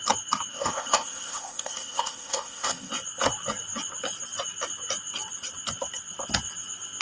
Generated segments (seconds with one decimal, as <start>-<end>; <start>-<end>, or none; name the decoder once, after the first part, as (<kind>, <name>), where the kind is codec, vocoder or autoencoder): 0.5-2.9 (codec, ZipCodec)